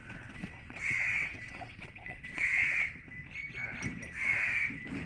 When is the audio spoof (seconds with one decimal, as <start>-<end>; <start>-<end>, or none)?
0.0-2.6